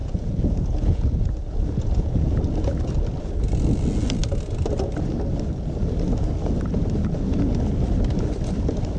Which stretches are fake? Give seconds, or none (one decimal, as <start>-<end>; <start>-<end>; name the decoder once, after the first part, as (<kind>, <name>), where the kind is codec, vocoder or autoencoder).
0.0-2.4 (vocoder, Vocos)